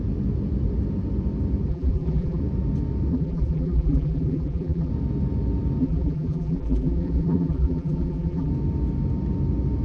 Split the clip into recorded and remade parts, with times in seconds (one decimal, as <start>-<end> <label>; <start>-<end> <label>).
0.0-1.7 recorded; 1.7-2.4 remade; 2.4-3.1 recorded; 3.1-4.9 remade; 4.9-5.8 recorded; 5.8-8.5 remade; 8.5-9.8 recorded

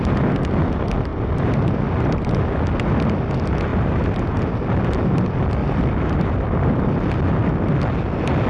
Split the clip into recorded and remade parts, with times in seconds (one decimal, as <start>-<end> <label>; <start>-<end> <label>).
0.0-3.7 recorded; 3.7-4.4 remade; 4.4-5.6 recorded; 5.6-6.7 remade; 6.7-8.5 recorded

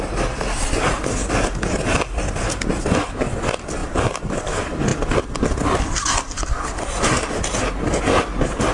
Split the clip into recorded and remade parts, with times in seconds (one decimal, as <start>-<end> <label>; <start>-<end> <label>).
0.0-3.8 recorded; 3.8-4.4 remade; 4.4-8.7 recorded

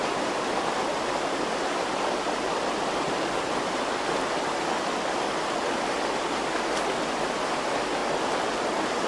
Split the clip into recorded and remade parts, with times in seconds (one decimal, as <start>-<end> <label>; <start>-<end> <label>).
0.0-8.0 recorded; 8.0-9.1 remade

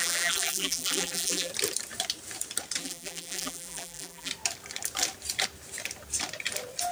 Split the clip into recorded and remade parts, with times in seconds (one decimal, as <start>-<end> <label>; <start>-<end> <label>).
0.0-1.5 remade; 1.5-2.8 recorded; 2.8-4.3 remade; 4.3-6.9 recorded